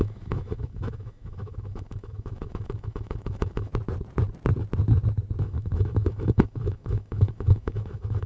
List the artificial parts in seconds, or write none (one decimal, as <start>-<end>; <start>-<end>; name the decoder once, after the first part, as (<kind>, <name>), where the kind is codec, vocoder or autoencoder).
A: 0.0-3.7 (autoencoder, DAC-VAE); 5.4-8.3